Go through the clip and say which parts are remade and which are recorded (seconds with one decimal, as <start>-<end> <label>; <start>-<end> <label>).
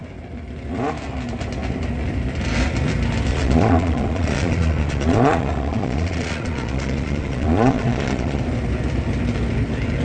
0.0-3.3 recorded; 3.3-8.4 remade; 8.4-10.0 recorded